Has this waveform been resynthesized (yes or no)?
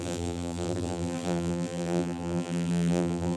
yes